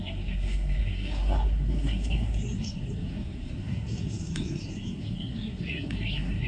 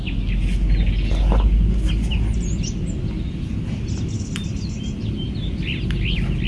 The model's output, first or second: first